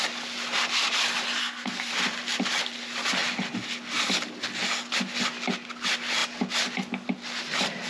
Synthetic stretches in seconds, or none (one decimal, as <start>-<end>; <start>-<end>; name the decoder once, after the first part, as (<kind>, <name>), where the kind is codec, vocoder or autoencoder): 1.4-1.9 (codec, SNAC)